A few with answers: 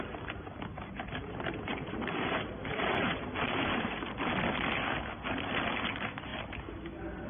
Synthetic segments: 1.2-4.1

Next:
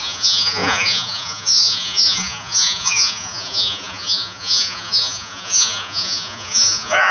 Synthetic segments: 0.0-7.1

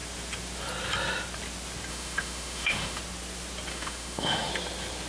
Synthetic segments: 1.9-3.0; 3.7-4.5

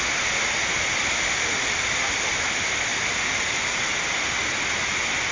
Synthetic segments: none

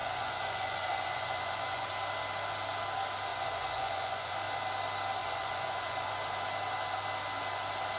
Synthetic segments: 0.0-1.9; 3.3-4.3; 5.2-6.1